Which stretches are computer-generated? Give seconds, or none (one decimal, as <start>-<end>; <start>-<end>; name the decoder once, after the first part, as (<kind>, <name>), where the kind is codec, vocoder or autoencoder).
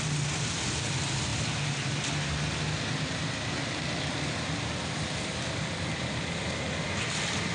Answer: none